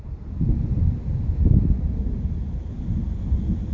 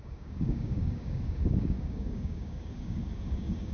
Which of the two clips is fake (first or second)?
second